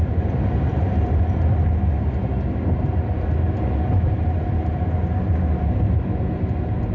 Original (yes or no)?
yes